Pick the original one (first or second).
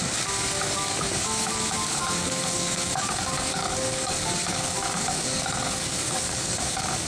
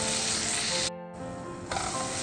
second